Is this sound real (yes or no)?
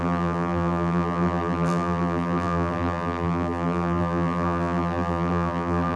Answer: no